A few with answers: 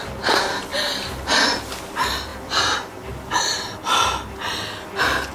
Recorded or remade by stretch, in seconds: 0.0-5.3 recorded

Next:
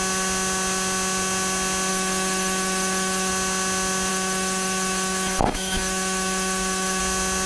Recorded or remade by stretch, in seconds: 0.0-1.9 recorded; 1.9-3.3 remade; 3.3-4.1 recorded; 4.1-7.0 remade; 7.0-7.5 recorded

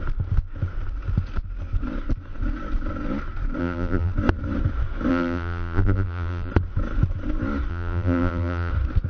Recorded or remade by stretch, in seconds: 0.0-3.6 recorded; 3.6-4.1 remade; 4.1-5.1 recorded; 5.1-6.5 remade; 6.5-7.7 recorded; 7.7-8.7 remade; 8.7-9.1 recorded

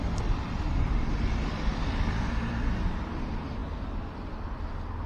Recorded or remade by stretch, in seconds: 0.0-5.1 recorded

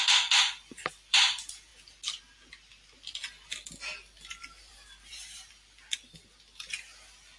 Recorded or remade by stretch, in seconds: 0.0-3.2 remade; 3.2-4.4 recorded; 4.4-7.4 remade

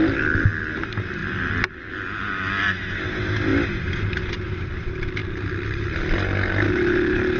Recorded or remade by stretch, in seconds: 0.0-7.4 recorded

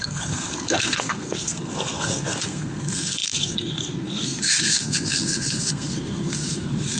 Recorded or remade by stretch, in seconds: 0.0-7.0 remade